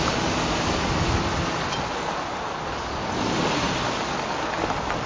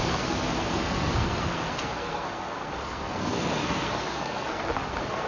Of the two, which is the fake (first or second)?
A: second